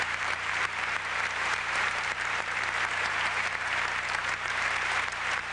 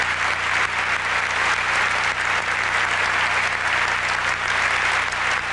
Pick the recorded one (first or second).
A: second